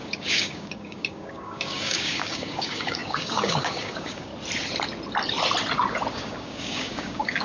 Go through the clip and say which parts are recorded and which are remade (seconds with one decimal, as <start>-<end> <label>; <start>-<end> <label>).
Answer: 0.0-4.3 remade; 4.3-6.1 recorded; 6.1-7.4 remade